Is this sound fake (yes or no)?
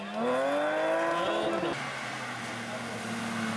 no